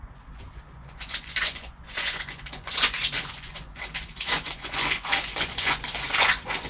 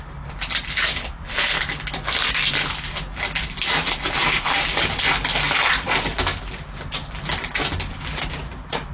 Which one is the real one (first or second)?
second